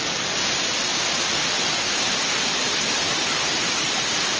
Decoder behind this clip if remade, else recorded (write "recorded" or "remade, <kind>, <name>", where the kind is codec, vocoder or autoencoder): recorded